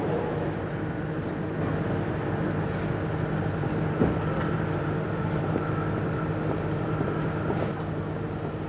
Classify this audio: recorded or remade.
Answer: recorded